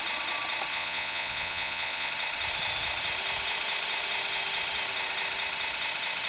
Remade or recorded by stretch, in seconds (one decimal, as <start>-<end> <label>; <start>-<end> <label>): 0.0-0.7 recorded; 0.7-2.1 remade; 2.1-6.3 recorded